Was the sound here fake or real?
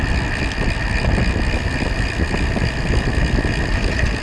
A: real